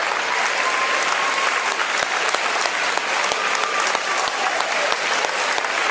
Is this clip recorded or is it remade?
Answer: recorded